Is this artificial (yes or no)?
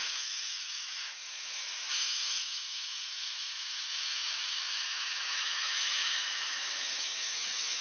yes